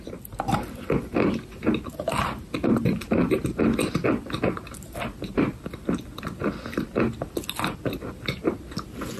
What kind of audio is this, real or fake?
real